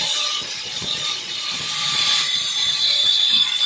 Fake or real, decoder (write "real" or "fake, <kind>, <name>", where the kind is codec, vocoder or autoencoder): fake, vocoder, Vocos